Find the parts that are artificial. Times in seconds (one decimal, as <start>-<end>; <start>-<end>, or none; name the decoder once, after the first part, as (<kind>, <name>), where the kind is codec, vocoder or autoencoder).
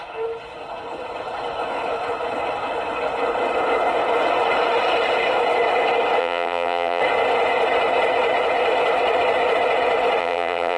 6.2-7.0 (vocoder, BigVGAN v2); 10.2-10.8